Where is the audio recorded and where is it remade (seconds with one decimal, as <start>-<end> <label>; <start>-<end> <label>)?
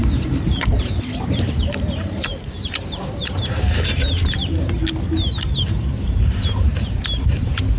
0.0-4.8 remade; 4.8-5.6 recorded; 5.6-7.8 remade